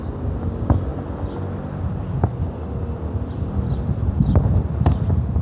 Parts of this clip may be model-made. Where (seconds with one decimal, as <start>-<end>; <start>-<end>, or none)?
none